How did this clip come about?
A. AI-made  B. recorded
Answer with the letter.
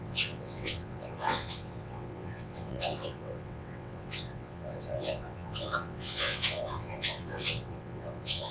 A